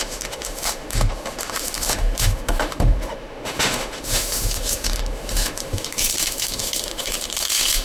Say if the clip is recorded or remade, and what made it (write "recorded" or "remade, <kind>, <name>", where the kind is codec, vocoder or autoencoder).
remade, autoencoder, DAC-VAE